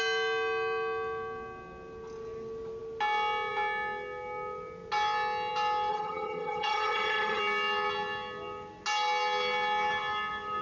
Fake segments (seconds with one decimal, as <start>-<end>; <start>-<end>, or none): 5.9-7.4